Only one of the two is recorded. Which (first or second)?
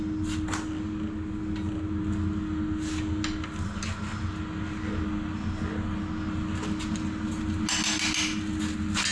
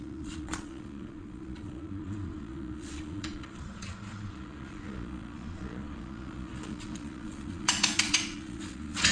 first